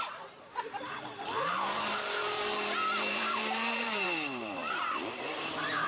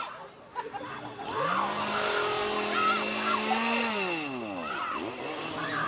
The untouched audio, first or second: second